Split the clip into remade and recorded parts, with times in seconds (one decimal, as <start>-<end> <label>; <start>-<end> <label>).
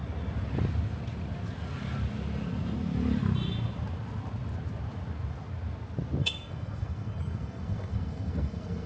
0.0-6.2 recorded; 6.2-8.9 remade